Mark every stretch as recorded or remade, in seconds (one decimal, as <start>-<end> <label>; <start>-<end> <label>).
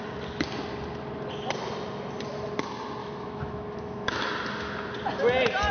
0.0-3.0 recorded; 3.0-4.2 remade; 4.2-5.7 recorded